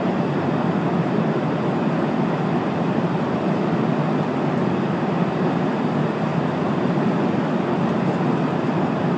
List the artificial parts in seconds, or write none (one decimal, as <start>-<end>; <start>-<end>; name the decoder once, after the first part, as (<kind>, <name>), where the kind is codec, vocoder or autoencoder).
none